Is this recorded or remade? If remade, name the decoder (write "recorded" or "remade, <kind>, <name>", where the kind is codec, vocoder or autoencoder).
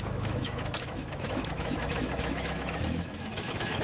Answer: remade, autoencoder, DAC-VAE